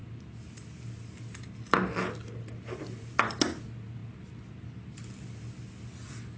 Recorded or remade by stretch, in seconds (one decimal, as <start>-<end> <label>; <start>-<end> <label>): 0.0-6.4 recorded